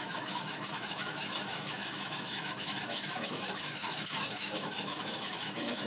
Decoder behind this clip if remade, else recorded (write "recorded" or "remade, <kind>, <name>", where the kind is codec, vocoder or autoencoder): remade, autoencoder, DAC-VAE